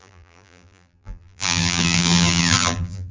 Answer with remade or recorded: remade